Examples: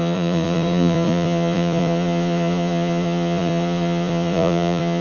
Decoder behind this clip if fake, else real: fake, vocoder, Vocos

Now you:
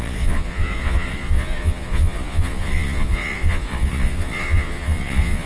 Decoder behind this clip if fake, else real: fake, vocoder, Vocos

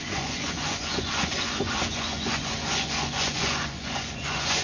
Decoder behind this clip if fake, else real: fake, vocoder, Vocos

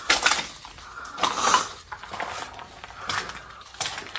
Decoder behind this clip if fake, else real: real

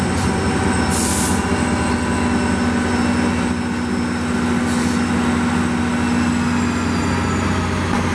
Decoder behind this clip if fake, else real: real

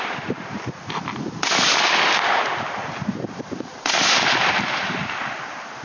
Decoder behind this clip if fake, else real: real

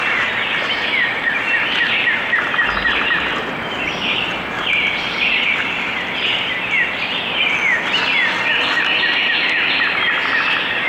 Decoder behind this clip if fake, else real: real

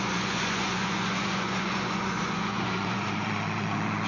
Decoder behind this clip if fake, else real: fake, vocoder, Vocos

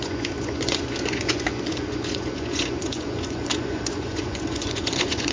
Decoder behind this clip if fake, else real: fake, vocoder, Vocos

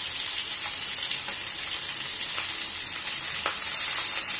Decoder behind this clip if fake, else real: real